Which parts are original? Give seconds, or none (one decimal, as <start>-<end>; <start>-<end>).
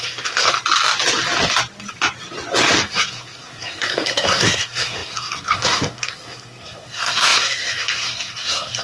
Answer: 0.5-2.8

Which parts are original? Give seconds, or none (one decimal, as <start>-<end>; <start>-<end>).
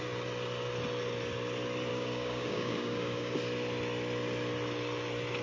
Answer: 0.0-1.9; 3.3-5.4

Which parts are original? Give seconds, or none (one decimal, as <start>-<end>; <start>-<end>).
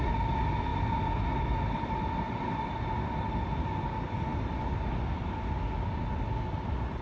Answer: 0.0-7.0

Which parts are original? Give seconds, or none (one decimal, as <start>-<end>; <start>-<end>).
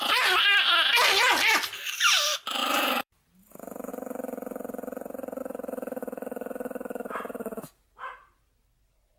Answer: 0.0-2.6; 3.9-5.4; 6.0-9.2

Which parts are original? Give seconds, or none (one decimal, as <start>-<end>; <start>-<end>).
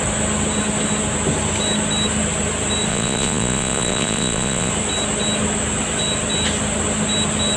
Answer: 0.0-2.9; 4.7-7.6